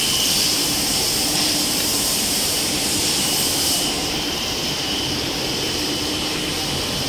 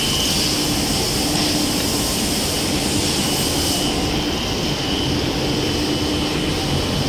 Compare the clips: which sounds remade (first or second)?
first